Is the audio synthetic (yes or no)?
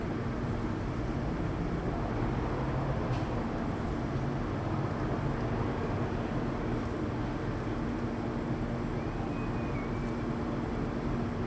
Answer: no